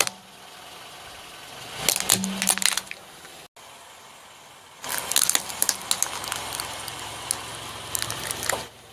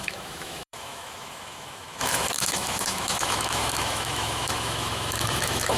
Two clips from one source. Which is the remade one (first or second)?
second